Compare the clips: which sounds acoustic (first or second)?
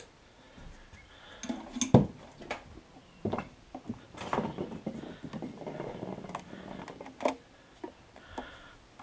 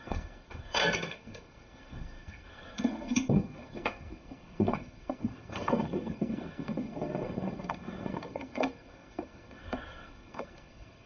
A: first